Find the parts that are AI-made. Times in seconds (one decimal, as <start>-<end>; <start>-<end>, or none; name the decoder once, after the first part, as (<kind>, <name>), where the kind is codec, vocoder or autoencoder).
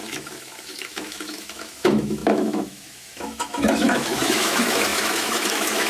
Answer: 0.0-5.9 (autoencoder, DAC-VAE)